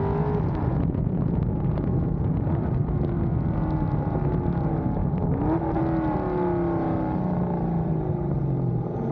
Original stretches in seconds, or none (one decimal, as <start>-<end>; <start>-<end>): 0.0-0.7; 2.6-9.1